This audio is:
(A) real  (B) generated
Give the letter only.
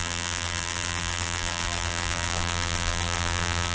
B